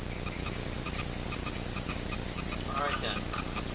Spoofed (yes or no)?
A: no